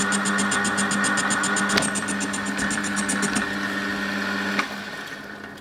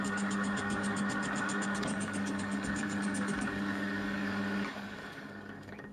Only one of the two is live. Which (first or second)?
first